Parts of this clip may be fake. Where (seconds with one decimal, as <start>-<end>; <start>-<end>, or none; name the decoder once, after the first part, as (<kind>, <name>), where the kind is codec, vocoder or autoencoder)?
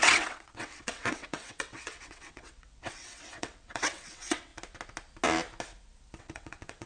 0.0-4.5 (vocoder, WaveNeXt); 6.2-6.9